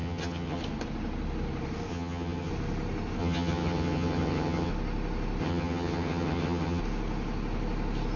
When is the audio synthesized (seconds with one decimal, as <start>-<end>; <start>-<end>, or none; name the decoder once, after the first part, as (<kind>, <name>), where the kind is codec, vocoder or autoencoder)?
0.0-0.6 (vocoder, HiFi-GAN); 1.9-2.5; 3.2-4.7; 5.4-6.8